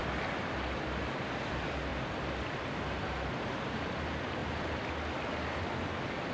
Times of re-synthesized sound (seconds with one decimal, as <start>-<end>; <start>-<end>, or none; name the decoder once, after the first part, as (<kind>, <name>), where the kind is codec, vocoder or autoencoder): none